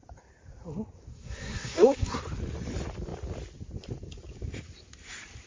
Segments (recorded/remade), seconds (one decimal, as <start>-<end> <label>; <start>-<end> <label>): 0.0-1.1 recorded; 1.1-2.2 remade; 2.2-5.5 recorded